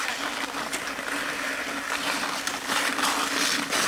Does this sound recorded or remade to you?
recorded